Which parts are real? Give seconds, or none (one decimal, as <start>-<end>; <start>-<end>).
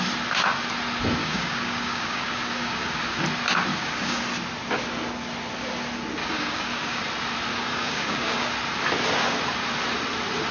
0.0-1.2; 3.2-3.7; 4.2-6.2; 7.0-7.5; 8.5-10.5